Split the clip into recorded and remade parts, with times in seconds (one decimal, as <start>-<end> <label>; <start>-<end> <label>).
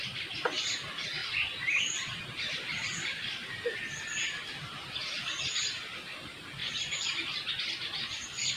0.0-1.2 recorded; 1.2-5.0 remade; 5.0-6.6 recorded; 6.6-7.5 remade; 7.5-8.6 recorded